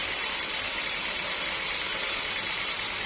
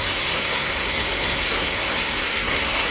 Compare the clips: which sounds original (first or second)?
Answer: first